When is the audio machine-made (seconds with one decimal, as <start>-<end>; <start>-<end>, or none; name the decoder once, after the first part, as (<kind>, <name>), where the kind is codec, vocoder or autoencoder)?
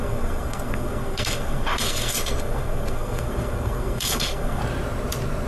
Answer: 0.0-4.6 (codec, SNAC)